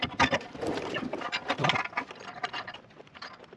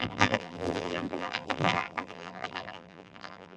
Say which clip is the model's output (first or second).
second